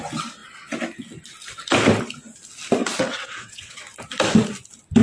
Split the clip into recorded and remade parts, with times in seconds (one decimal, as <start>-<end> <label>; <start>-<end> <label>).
0.0-2.8 recorded; 2.8-3.8 remade; 3.8-5.0 recorded